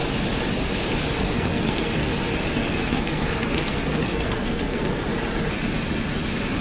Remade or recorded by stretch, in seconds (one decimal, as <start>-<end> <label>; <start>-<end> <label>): 0.0-1.2 recorded; 1.2-2.1 remade; 2.1-2.6 recorded; 2.6-4.9 remade; 4.9-6.6 recorded